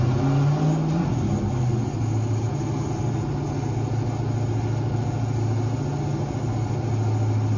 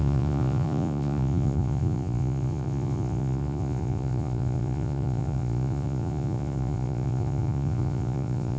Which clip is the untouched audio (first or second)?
first